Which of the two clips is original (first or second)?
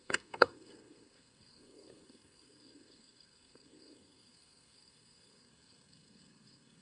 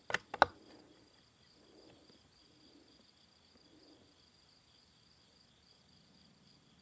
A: second